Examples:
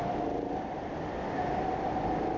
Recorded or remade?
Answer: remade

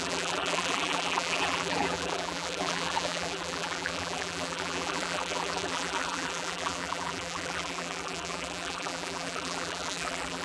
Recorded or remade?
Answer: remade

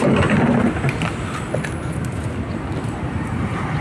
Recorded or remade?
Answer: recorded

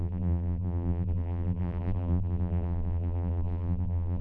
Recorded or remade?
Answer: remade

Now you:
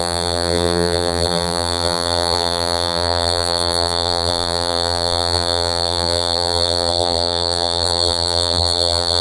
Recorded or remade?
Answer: remade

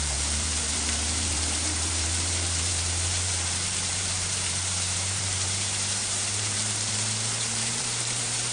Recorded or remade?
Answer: remade